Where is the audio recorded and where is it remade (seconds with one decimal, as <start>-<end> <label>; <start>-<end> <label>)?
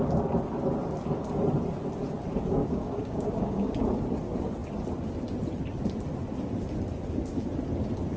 0.0-2.6 recorded; 2.6-3.7 remade; 3.7-8.2 recorded